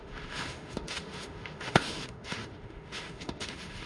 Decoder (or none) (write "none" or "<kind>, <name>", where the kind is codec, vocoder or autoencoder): autoencoder, DAC-VAE